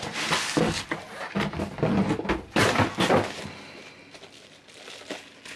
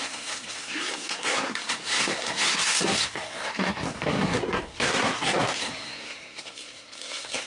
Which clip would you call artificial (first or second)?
second